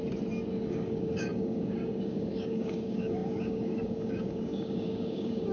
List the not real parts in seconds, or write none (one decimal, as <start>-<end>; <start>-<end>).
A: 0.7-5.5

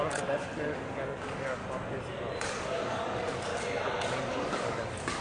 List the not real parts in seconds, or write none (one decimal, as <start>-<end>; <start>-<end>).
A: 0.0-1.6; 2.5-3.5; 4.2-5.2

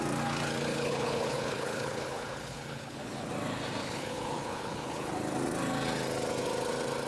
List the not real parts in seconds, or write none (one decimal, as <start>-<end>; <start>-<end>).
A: 0.7-3.3; 3.8-5.1